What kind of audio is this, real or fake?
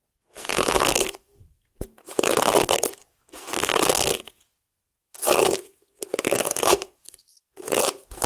fake